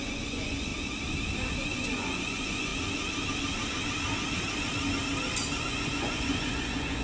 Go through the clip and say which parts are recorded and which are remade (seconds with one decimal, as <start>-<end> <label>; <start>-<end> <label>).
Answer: 0.0-0.7 remade; 0.7-1.5 recorded; 1.5-2.7 remade; 2.7-5.6 recorded; 5.6-7.0 remade